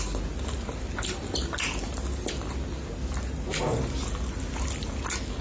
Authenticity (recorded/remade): recorded